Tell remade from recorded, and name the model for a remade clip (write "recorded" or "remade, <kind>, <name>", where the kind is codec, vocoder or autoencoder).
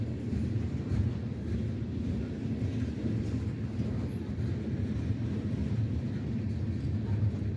recorded